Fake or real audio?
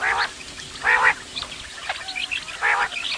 real